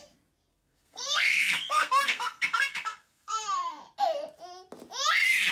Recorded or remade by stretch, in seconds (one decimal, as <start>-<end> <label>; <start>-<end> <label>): 0.0-0.5 recorded; 0.5-3.8 remade; 3.8-5.5 recorded